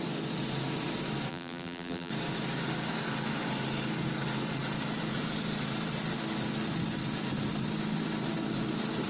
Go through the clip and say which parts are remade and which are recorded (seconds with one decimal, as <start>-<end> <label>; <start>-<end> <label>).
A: 0.0-1.3 recorded; 1.3-2.1 remade; 2.1-9.1 recorded